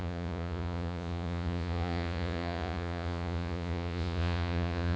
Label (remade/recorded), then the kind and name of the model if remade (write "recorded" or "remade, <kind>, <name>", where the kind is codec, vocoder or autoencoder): remade, vocoder, Vocos